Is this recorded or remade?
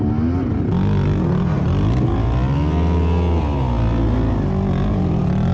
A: recorded